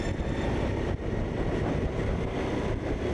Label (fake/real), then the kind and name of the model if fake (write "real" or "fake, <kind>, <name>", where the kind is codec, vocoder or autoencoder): real